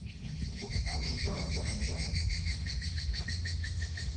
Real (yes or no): no